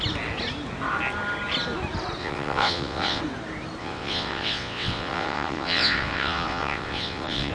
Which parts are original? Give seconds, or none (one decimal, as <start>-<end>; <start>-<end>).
0.0-2.2; 3.2-3.8